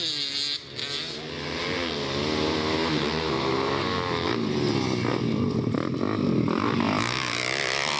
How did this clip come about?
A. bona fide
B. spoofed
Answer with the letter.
A